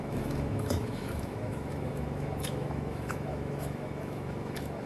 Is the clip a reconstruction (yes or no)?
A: yes